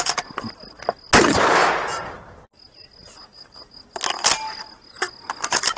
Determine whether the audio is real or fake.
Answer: real